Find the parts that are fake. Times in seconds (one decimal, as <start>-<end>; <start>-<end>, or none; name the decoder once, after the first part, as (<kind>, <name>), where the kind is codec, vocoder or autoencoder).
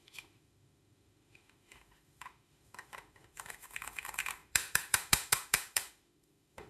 0.0-6.7 (autoencoder, DAC-VAE)